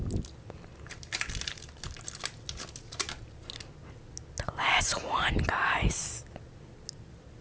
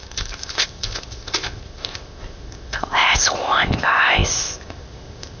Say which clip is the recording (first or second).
first